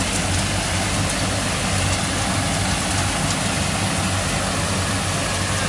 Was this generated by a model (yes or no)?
no